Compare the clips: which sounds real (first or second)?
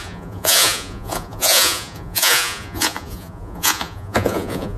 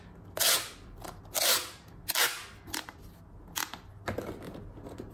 second